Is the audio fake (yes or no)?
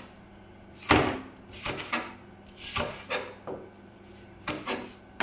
no